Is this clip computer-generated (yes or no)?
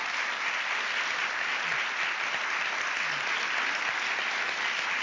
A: no